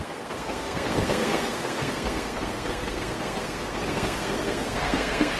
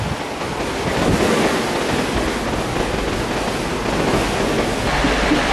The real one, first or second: second